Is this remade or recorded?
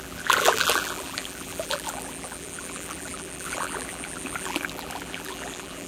remade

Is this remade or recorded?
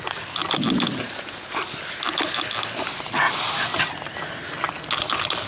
recorded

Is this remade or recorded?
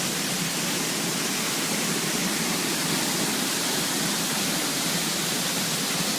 recorded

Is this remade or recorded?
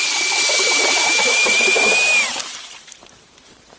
remade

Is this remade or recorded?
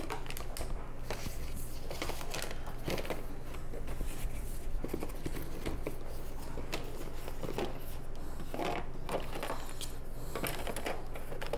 recorded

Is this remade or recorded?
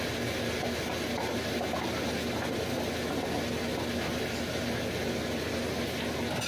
recorded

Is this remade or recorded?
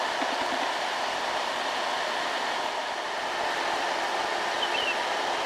recorded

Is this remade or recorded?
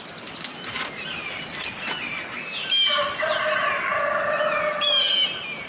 recorded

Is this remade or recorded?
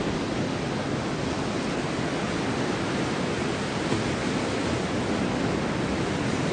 recorded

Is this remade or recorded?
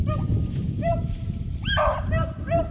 remade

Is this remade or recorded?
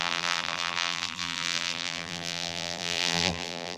remade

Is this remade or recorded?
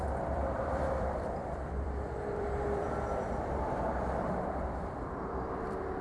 remade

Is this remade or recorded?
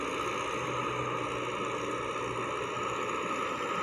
recorded